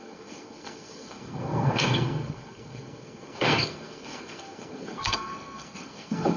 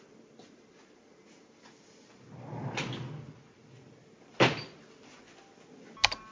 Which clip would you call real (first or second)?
second